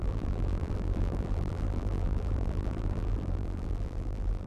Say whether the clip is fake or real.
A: fake